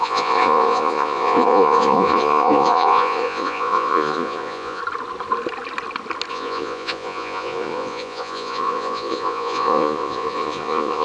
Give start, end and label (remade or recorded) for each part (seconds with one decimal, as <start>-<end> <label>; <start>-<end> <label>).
0.0-4.8 remade; 4.8-6.3 recorded; 6.3-11.0 remade